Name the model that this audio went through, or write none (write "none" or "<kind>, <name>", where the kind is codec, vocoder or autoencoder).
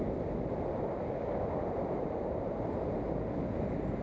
none